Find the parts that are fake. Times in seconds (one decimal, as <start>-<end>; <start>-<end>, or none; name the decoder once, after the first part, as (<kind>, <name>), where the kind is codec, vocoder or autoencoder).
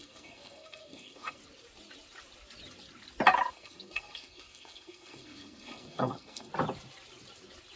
0.0-1.4 (codec, SNAC); 3.5-6.5